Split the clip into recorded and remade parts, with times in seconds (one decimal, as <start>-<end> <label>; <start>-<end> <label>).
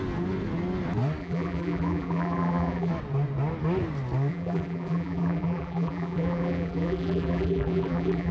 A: 0.0-1.2 recorded; 1.2-2.9 remade; 2.9-4.3 recorded; 4.3-8.3 remade